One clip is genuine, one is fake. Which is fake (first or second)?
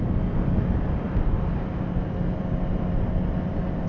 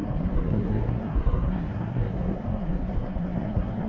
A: second